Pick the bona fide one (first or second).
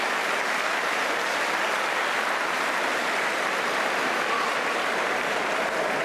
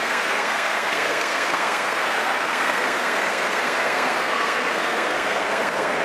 first